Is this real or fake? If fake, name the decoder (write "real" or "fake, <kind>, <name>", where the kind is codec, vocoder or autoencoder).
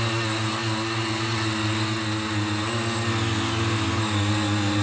real